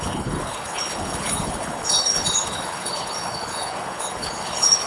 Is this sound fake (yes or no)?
yes